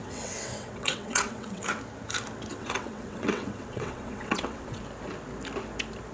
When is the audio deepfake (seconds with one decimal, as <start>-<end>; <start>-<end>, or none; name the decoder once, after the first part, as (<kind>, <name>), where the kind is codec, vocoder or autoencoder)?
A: 0.0-1.6 (vocoder, WaveNeXt); 2.5-4.8